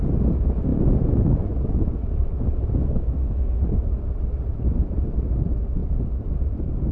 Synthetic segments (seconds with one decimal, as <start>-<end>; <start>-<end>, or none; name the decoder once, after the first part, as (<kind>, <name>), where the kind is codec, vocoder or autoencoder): 2.8-3.6 (codec, SNAC)